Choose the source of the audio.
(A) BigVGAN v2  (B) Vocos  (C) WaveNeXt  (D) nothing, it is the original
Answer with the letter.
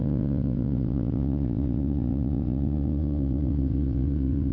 C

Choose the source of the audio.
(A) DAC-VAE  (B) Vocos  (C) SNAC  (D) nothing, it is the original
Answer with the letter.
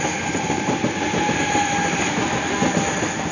D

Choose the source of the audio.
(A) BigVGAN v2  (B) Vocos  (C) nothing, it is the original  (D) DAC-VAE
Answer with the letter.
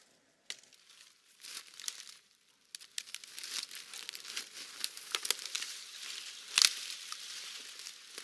C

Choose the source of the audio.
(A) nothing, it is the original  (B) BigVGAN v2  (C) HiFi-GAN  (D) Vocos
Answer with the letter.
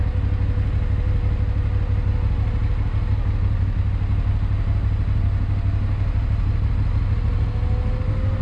A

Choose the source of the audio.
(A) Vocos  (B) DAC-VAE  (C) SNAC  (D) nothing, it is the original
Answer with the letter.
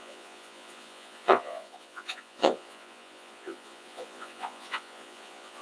A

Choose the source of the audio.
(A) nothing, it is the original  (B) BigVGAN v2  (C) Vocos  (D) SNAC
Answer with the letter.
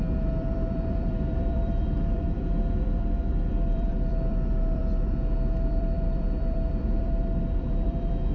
B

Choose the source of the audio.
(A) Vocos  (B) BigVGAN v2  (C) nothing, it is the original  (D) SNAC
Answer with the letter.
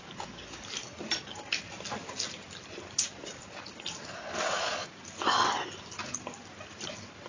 C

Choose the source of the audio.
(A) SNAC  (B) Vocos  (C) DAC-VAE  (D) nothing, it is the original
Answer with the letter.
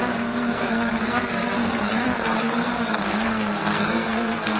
A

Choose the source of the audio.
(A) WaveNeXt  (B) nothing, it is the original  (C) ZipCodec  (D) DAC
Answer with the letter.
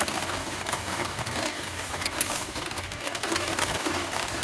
D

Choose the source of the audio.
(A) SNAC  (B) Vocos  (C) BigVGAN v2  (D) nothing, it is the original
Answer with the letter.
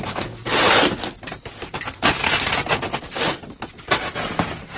D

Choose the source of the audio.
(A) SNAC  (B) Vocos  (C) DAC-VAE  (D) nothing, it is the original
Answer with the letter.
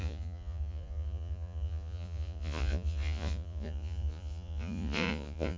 B